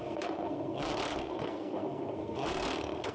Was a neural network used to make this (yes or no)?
yes